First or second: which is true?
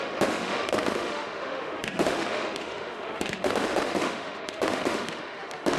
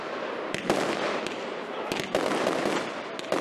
second